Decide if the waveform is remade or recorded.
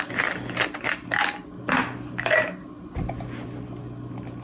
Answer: recorded